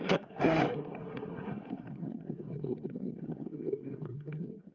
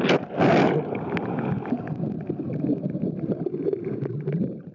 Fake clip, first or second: first